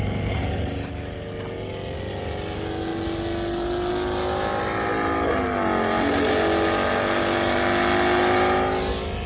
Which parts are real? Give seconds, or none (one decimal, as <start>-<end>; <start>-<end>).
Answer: 0.0-9.3